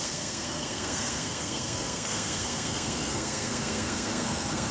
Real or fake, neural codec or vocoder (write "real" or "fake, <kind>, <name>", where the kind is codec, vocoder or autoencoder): fake, codec, SNAC